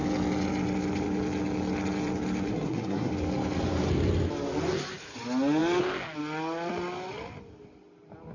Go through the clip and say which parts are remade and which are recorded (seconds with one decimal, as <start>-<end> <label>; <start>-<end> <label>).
0.0-2.5 recorded; 2.5-3.1 remade; 3.1-8.3 recorded

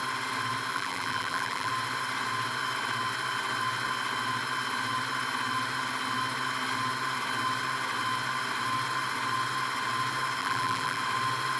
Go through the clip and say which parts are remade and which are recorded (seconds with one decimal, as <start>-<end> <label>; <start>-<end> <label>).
0.0-0.7 recorded; 0.7-1.7 remade; 1.7-10.4 recorded; 10.4-11.0 remade; 11.0-11.6 recorded

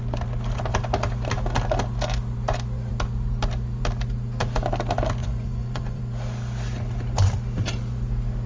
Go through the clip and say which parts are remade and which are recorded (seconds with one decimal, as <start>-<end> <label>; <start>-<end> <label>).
0.0-5.2 recorded; 5.2-6.0 remade; 6.0-8.5 recorded

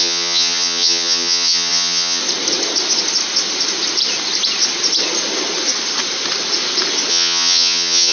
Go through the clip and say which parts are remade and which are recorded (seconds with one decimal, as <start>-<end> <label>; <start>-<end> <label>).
0.0-2.2 remade; 2.2-7.1 recorded; 7.1-8.1 remade

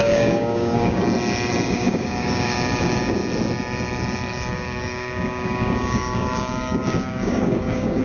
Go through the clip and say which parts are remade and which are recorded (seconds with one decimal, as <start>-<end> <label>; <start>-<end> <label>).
0.0-1.0 remade; 1.0-1.7 recorded; 1.7-3.2 remade; 3.2-4.5 recorded; 4.5-8.0 remade

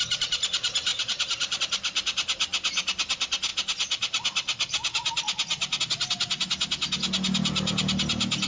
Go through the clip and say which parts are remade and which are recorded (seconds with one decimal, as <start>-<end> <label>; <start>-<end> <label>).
0.0-0.9 recorded; 0.9-1.6 remade; 1.6-8.5 recorded